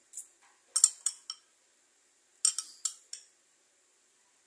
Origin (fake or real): real